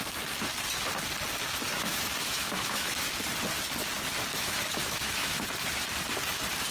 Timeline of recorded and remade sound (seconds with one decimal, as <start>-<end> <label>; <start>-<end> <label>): 0.0-1.7 recorded; 1.7-3.1 remade; 3.1-4.3 recorded; 4.3-5.4 remade; 5.4-6.7 recorded